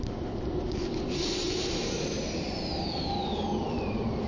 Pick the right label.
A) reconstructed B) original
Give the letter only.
B